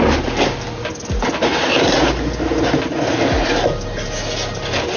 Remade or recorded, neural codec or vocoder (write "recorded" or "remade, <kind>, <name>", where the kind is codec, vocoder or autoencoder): recorded